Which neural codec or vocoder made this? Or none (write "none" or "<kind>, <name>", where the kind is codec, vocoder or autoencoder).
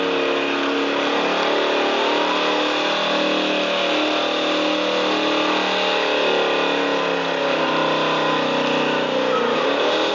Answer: none